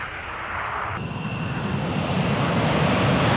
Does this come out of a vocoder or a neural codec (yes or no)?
no